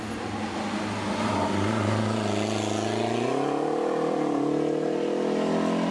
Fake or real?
real